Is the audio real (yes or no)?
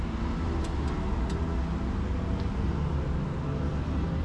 yes